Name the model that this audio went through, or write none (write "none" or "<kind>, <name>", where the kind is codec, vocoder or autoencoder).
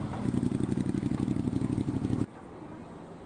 none